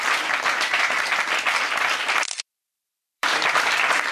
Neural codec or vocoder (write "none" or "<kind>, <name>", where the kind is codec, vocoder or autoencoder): vocoder, BigVGAN v2